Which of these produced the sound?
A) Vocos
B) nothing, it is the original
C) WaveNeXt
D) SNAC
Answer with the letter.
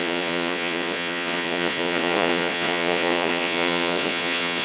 A